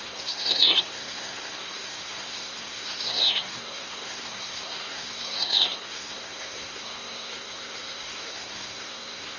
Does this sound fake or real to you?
fake